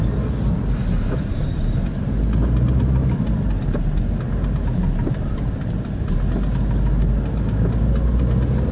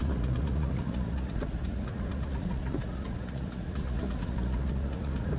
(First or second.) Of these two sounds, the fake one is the second